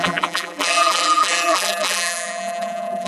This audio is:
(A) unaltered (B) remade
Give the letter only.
B